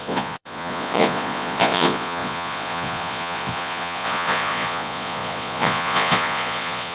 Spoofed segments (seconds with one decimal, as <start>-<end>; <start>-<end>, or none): 0.0-6.9